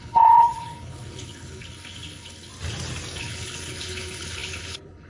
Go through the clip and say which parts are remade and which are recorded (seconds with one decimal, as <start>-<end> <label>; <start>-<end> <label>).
0.0-2.5 remade; 2.5-3.2 recorded; 3.2-5.1 remade